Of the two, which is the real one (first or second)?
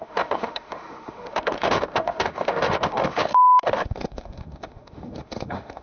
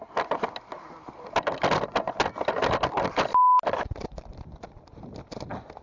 second